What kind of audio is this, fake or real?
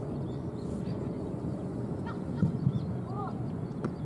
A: fake